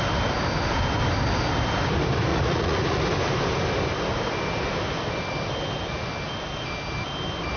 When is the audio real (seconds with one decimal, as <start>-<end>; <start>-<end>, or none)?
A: 0.0-2.3; 3.0-7.6